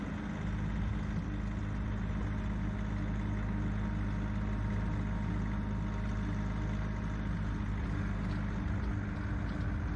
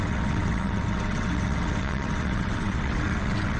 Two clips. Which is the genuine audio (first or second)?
first